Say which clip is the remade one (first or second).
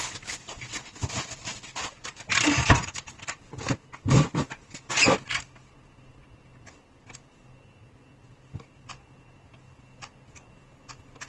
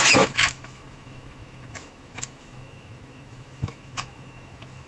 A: second